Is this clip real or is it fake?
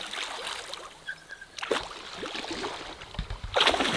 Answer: real